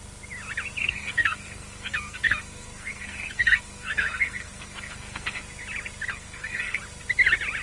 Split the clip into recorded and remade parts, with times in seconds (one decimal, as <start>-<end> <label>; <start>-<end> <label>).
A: 0.0-0.8 recorded; 0.8-5.4 remade; 5.4-6.1 recorded; 6.1-6.8 remade; 6.8-7.6 recorded